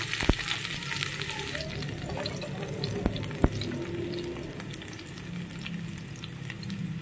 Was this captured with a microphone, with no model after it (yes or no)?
yes